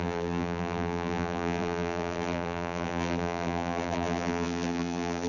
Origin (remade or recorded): remade